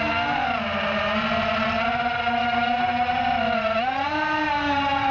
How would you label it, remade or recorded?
recorded